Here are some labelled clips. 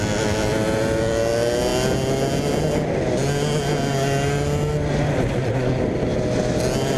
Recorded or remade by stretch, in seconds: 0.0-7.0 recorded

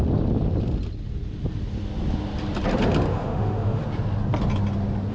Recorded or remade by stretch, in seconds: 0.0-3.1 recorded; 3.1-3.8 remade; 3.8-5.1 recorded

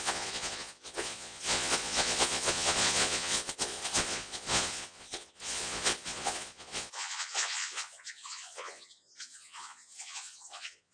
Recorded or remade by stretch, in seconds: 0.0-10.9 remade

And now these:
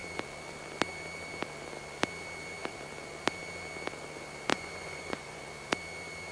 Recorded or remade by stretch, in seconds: 0.0-4.5 recorded; 4.5-5.4 remade; 5.4-6.3 recorded